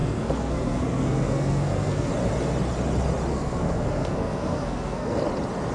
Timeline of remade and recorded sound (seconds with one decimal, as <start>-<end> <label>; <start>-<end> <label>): 0.0-2.1 remade; 2.1-3.3 recorded; 3.3-5.2 remade; 5.2-5.7 recorded